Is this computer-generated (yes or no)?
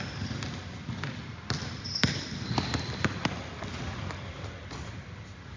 no